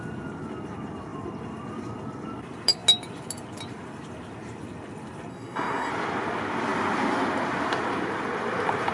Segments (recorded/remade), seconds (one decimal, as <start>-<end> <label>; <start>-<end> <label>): 0.0-5.3 recorded; 5.3-5.9 remade; 5.9-8.9 recorded